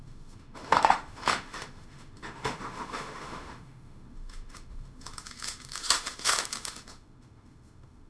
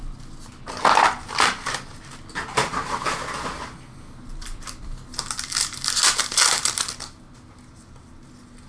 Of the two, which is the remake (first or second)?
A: first